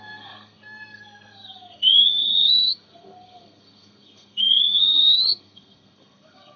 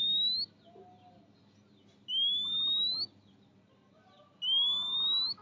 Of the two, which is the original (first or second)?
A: second